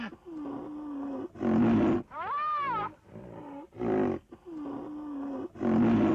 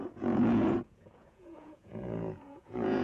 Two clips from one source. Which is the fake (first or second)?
second